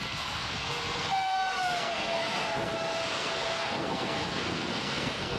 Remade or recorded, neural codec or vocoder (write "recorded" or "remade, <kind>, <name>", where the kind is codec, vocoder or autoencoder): remade, codec, SNAC